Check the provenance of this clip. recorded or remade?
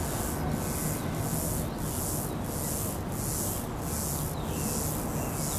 recorded